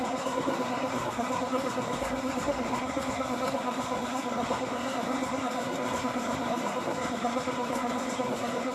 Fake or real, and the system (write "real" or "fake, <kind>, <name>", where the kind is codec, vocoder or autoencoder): fake, codec, SNAC